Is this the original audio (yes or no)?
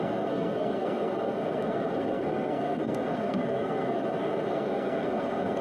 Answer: no